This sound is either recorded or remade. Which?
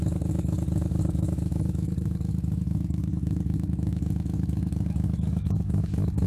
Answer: remade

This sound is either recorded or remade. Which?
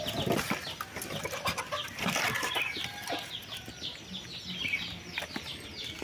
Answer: recorded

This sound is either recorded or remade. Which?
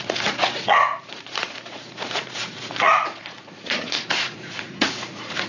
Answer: remade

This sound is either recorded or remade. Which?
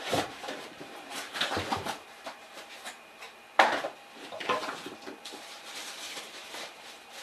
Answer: remade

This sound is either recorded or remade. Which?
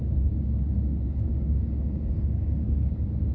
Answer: remade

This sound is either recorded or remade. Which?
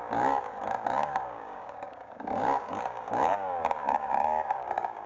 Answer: remade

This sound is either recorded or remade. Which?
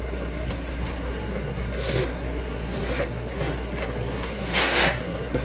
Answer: remade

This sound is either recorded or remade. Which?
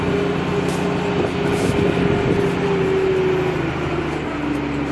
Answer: recorded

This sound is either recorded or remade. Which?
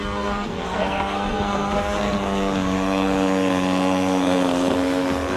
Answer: remade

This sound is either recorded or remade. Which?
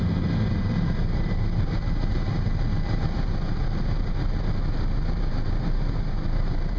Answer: remade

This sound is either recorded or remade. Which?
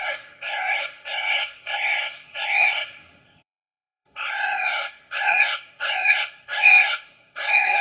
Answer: remade